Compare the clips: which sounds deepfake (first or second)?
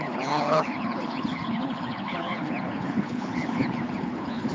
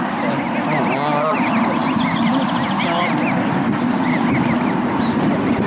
first